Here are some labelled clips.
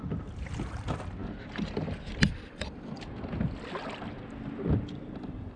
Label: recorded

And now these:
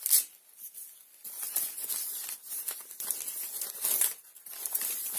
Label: recorded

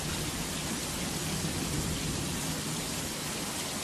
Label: recorded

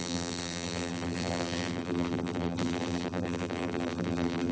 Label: remade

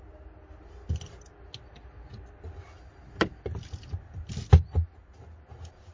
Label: recorded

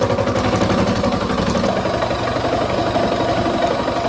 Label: recorded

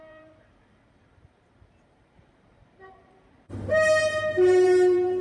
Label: remade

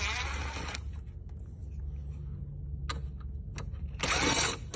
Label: recorded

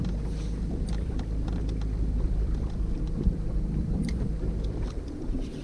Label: remade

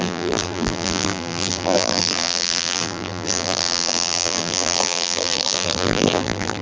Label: remade